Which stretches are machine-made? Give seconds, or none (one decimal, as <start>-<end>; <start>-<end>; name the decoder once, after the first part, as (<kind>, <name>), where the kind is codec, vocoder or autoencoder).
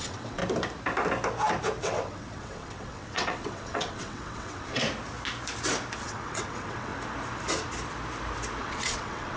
0.0-0.4 (vocoder, WaveNeXt); 1.8-4.8; 6.0-6.9; 8.6-9.4